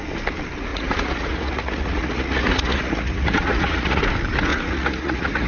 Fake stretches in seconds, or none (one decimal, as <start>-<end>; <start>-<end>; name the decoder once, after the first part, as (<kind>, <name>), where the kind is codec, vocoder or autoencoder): 0.7-4.0 (vocoder, Vocos); 4.5-5.5